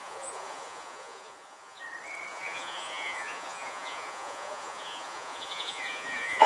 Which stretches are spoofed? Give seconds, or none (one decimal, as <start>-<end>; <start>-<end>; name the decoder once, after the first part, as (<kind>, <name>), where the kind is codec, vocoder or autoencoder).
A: 0.0-1.8 (vocoder, Vocos); 2.3-6.5